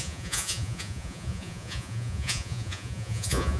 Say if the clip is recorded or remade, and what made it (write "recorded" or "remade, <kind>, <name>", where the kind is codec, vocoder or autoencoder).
remade, vocoder, Vocos